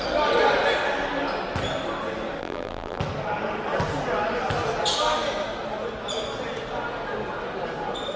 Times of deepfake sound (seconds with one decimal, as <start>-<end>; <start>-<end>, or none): 2.4-3.0